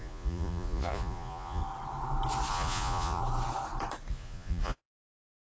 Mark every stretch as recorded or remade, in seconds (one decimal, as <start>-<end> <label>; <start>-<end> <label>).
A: 0.0-1.6 remade; 1.6-2.5 recorded; 2.5-3.2 remade; 3.2-4.1 recorded; 4.1-5.4 remade